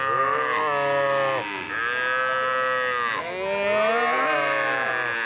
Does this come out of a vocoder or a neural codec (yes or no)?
no